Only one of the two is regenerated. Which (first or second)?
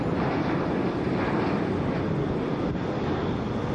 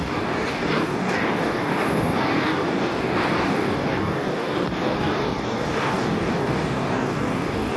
second